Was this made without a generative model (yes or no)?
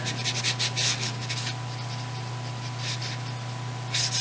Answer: yes